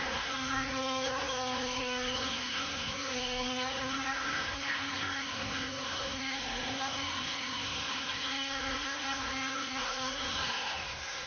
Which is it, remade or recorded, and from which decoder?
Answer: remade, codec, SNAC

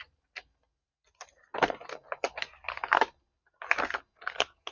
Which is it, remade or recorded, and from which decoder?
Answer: recorded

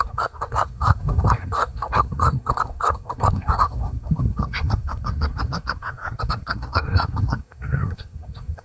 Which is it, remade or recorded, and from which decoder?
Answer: remade, codec, SNAC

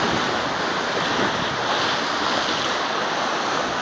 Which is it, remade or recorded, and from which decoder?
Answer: recorded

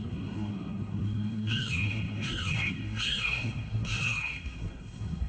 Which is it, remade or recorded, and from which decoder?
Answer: remade, codec, SNAC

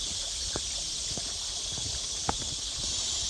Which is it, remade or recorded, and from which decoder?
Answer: recorded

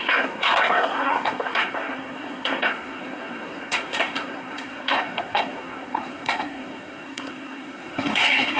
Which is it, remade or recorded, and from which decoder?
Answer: remade, codec, SNAC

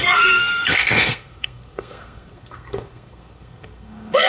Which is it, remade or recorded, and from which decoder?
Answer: remade, codec, SNAC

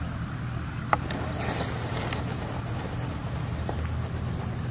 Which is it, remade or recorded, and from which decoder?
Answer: recorded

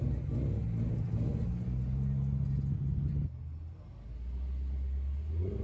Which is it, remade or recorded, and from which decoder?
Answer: recorded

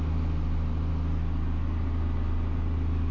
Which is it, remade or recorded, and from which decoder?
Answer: recorded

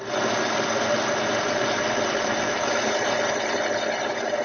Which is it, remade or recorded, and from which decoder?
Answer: recorded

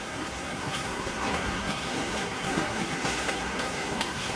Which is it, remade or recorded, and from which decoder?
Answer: remade, codec, SNAC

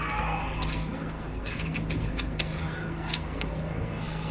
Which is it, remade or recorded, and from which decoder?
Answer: remade, codec, SNAC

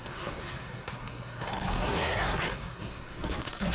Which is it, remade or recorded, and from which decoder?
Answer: remade, codec, SNAC